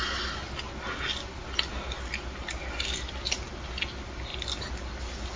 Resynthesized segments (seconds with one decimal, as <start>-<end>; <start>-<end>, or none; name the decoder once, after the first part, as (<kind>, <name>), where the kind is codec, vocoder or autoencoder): none